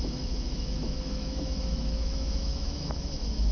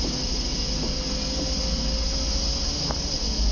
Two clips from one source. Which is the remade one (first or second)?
first